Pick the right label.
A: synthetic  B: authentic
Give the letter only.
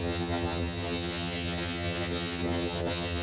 A